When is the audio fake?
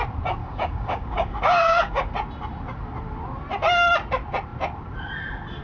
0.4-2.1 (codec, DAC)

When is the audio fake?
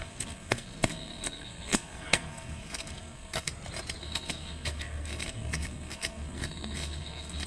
0.0-3.5 (codec, SNAC); 4.0-7.5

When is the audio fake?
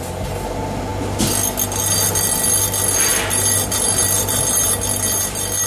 none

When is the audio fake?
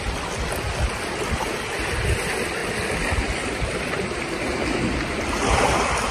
2.6-4.2 (vocoder, BigVGAN v2)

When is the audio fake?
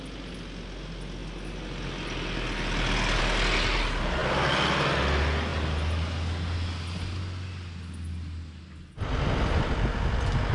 none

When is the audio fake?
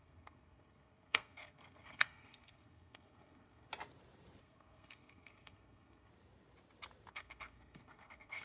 0.0-3.7 (codec, SNAC); 4.4-6.1; 7.1-8.4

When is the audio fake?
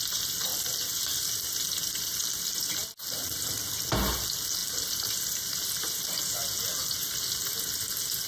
none